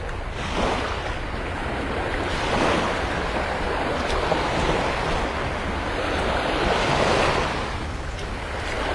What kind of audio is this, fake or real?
real